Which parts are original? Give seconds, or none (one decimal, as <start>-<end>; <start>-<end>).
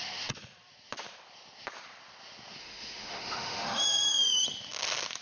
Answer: 0.0-2.6; 4.4-5.2